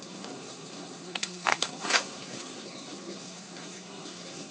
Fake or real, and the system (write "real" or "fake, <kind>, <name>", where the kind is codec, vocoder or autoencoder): fake, codec, SNAC